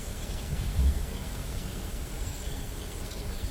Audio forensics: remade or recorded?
remade